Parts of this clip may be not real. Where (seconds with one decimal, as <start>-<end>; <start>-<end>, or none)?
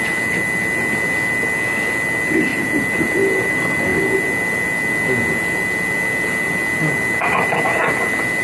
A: 2.5-3.5